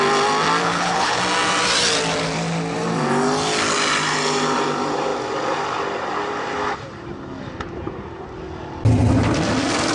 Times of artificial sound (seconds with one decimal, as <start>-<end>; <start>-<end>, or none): 0.6-1.2